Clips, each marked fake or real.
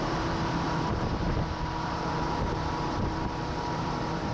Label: fake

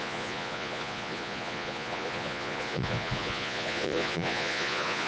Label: fake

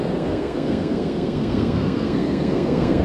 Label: fake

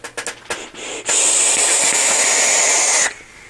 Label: real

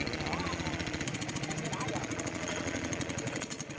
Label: fake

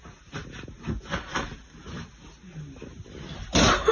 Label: real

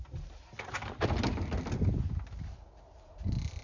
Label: real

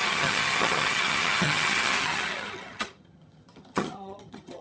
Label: fake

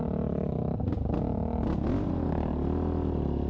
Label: real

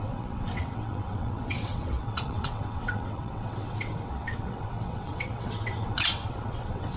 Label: fake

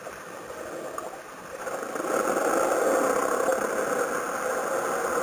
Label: real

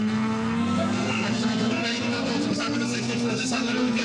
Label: fake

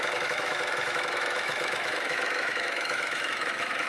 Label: fake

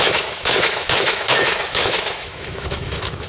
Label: fake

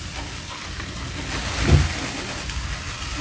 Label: real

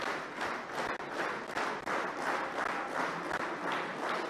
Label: real